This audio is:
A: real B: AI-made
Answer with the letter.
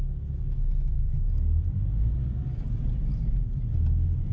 A